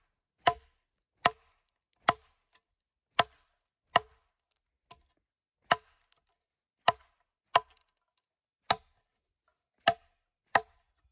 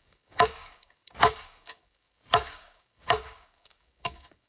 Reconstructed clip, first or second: second